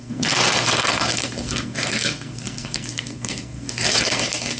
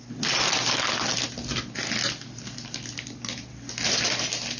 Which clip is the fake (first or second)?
first